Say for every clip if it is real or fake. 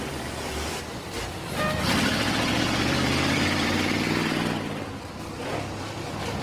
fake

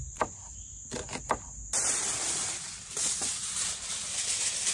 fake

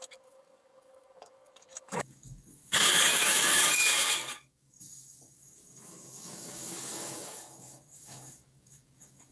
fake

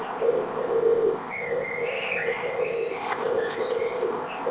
fake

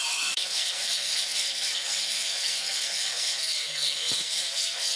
fake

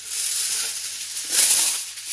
real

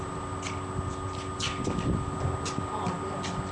real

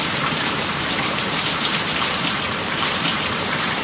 fake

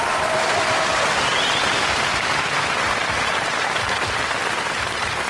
fake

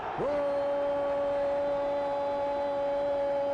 real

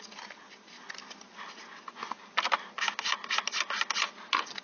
real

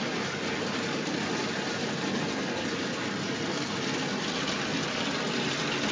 real